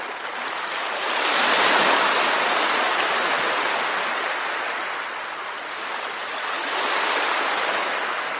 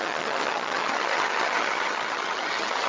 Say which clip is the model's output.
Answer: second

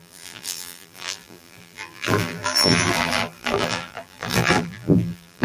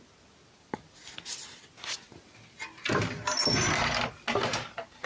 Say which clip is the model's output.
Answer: first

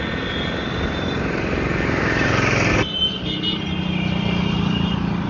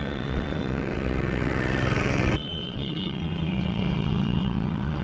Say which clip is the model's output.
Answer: second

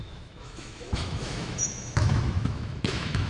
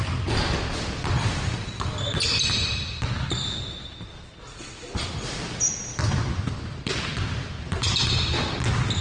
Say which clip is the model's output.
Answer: first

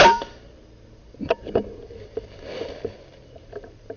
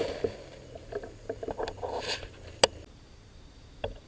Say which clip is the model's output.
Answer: first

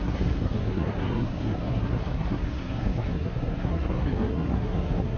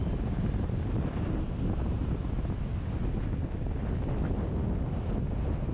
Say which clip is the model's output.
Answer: first